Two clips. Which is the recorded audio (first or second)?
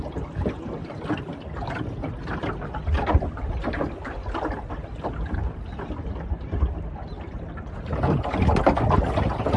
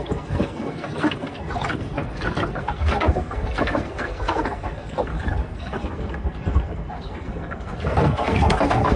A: first